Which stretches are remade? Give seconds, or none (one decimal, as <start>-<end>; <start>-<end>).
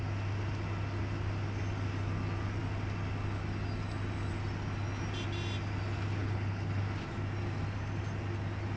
6.2-6.8